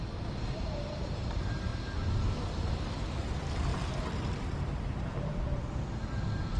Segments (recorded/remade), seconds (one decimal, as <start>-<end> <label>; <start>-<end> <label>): 0.0-1.7 remade; 1.7-3.2 recorded; 3.2-3.7 remade; 3.7-6.6 recorded